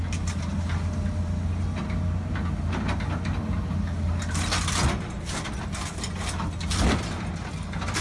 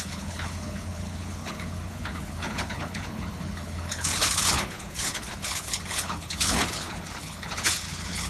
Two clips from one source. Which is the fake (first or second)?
second